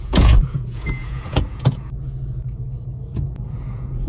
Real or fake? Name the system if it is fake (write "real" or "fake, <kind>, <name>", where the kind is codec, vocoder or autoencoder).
fake, vocoder, Vocos